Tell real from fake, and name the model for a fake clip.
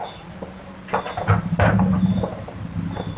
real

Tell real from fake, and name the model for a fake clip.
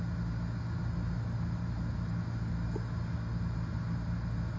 real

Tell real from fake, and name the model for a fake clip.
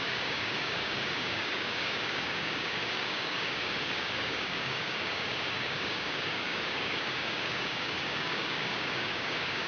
fake, codec, DAC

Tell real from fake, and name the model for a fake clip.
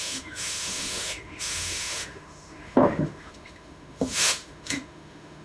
fake, autoencoder, DAC-VAE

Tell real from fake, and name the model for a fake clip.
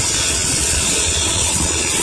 fake, vocoder, Vocos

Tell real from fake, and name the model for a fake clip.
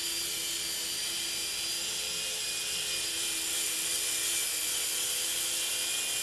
real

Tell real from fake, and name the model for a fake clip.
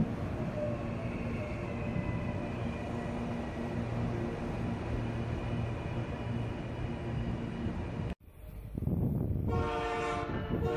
real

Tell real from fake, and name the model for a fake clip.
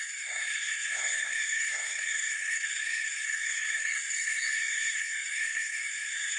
fake, codec, SNAC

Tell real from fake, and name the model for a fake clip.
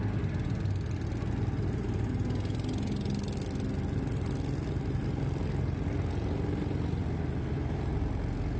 real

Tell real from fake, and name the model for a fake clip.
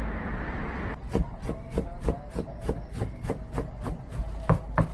real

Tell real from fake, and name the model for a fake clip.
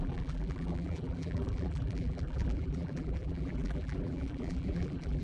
fake, vocoder, BigVGAN v2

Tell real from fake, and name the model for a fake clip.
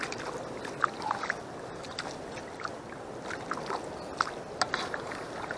real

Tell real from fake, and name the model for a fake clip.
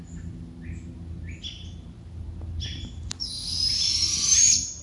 real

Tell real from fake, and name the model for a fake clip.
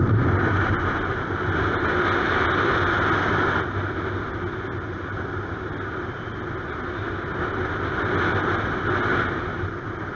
real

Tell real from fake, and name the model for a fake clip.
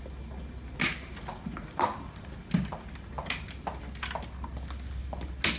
real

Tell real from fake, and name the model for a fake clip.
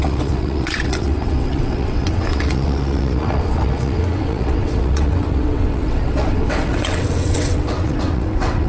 fake, vocoder, WaveNeXt